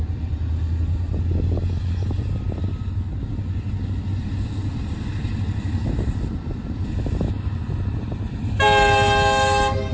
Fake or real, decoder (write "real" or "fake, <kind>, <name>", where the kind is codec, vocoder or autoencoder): real